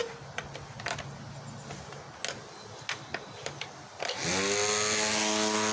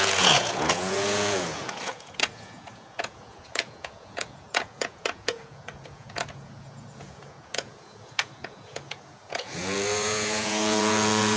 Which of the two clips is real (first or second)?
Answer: first